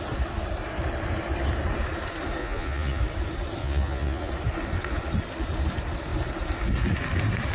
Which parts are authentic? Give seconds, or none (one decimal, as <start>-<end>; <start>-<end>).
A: 0.0-2.4; 3.0-3.6; 4.3-7.5